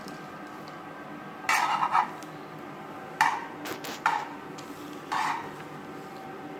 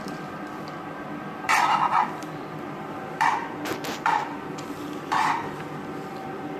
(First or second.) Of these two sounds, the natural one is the first